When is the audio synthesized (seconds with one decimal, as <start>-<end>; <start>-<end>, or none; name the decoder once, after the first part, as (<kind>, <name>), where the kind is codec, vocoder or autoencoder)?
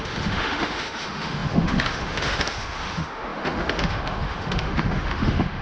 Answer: 0.0-5.6 (autoencoder, DAC-VAE)